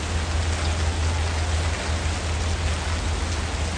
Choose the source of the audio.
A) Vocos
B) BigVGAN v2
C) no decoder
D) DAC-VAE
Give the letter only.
C